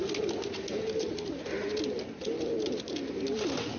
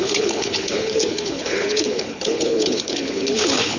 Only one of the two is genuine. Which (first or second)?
first